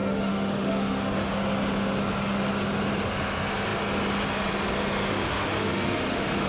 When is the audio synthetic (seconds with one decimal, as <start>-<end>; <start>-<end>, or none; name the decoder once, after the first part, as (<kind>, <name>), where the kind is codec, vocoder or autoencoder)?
0.0-1.3 (autoencoder, DAC-VAE); 5.1-6.5